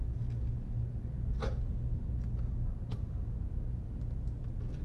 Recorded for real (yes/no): yes